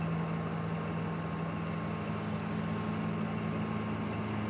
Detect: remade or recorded recorded